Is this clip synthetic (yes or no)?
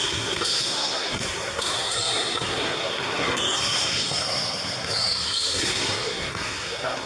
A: yes